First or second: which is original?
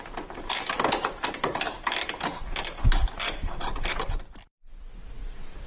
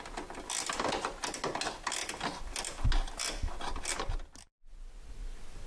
second